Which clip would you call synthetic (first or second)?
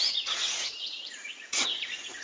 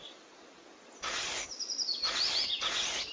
first